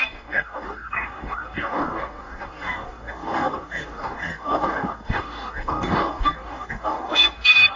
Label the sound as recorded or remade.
remade